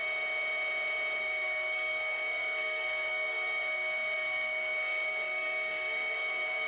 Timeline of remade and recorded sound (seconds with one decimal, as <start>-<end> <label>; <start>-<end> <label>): 0.0-1.2 recorded; 1.2-6.7 remade